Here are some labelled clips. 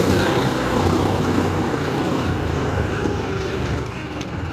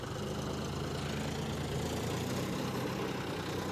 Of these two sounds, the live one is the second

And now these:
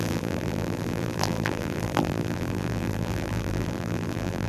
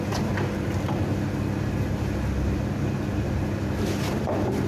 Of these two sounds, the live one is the second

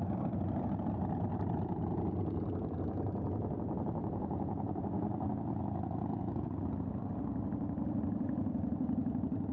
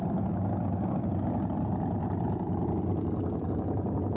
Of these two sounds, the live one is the second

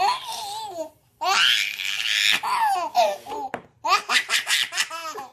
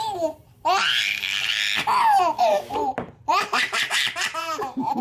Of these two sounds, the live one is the first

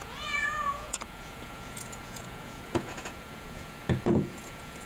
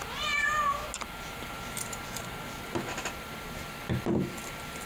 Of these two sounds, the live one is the second